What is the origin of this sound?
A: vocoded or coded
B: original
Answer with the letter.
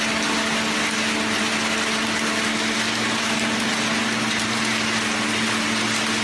B